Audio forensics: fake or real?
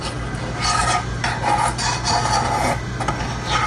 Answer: real